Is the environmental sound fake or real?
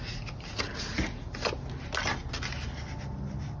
real